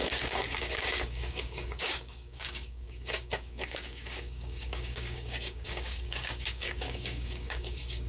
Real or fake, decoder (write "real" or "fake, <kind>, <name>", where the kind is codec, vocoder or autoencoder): fake, codec, DAC